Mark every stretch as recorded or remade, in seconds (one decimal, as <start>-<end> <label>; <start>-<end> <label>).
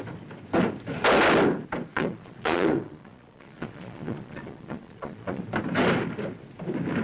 0.0-1.9 recorded; 1.9-5.4 remade; 5.4-7.0 recorded